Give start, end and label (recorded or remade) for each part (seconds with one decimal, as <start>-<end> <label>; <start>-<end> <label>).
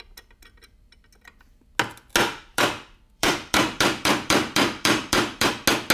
0.0-2.5 recorded; 2.5-5.5 remade; 5.5-5.9 recorded